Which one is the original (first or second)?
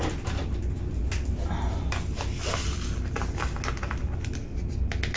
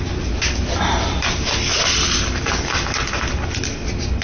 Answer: first